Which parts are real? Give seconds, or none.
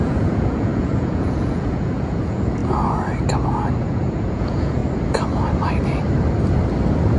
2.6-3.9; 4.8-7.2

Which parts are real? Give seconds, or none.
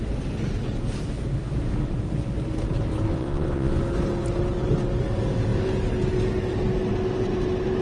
0.0-3.1; 3.8-7.8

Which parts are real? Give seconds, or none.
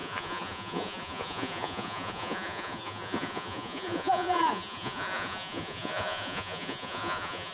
none